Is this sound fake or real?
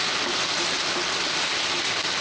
real